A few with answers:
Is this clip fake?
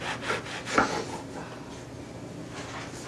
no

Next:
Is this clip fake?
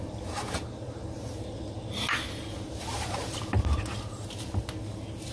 no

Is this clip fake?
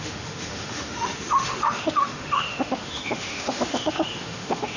yes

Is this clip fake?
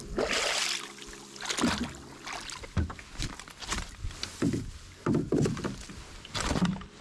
no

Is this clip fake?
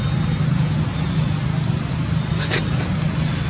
no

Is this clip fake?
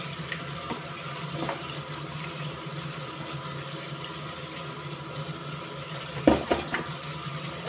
no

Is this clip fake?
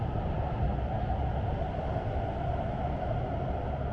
no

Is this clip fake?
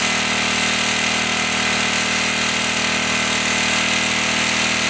no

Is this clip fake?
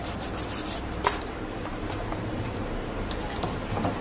no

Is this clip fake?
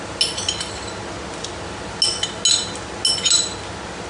no